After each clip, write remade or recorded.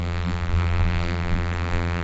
remade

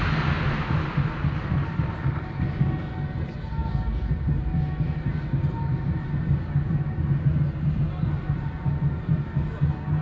recorded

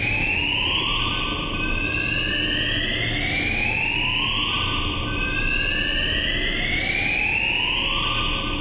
recorded